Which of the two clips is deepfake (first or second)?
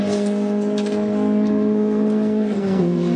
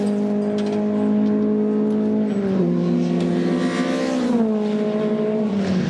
first